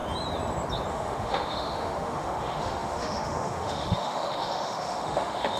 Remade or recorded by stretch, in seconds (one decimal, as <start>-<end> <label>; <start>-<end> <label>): 0.0-0.9 recorded; 0.9-5.6 remade